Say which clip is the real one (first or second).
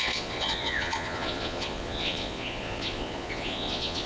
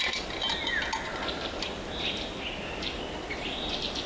second